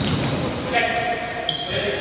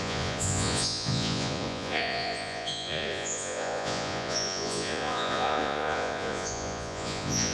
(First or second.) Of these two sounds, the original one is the first